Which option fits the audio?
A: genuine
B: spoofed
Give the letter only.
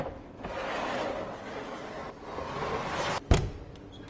A